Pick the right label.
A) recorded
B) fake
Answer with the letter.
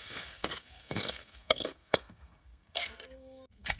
B